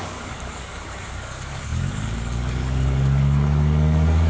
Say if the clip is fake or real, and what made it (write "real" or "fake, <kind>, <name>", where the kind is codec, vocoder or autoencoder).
fake, codec, DAC